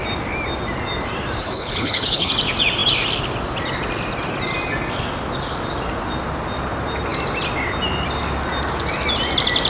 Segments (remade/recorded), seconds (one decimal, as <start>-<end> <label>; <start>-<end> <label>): 0.0-1.4 recorded; 1.4-2.3 remade; 2.3-9.7 recorded